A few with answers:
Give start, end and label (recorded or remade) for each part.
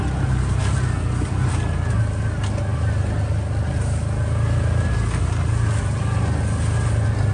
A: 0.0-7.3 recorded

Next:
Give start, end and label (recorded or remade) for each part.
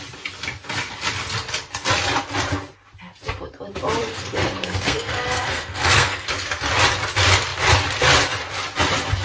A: 0.0-4.1 recorded; 4.1-6.6 remade; 6.6-9.2 recorded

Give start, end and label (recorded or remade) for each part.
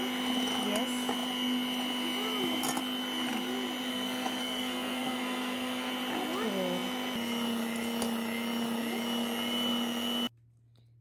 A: 0.0-3.9 recorded; 3.9-5.9 remade; 5.9-11.0 recorded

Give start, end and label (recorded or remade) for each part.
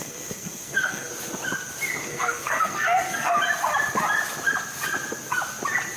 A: 0.0-1.1 remade; 1.1-2.1 recorded; 2.1-3.4 remade; 3.4-6.0 recorded